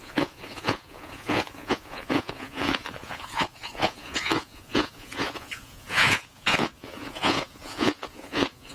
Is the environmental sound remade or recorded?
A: remade